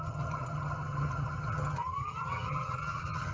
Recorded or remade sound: remade